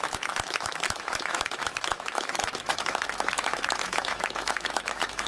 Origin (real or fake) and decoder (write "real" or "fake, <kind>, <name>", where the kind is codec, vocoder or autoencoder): fake, autoencoder, DAC-VAE